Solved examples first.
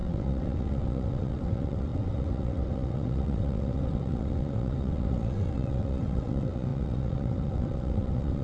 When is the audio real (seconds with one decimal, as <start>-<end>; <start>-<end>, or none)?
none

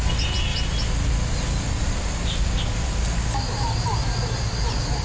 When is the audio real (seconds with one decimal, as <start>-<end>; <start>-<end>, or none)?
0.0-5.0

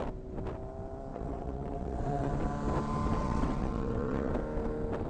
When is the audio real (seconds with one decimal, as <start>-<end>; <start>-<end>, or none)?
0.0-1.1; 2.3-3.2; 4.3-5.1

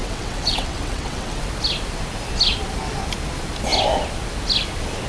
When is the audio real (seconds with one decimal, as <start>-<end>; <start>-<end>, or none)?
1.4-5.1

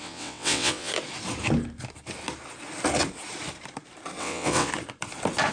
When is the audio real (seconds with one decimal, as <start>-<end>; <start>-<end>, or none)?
0.9-4.2; 4.7-5.5

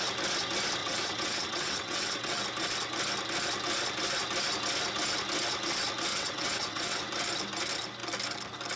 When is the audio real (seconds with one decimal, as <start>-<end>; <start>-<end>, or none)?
0.0-0.8; 2.4-6.1; 7.0-8.8

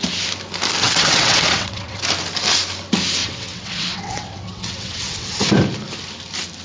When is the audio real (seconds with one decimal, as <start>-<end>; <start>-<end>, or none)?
0.0-0.8; 2.0-3.2; 5.4-6.6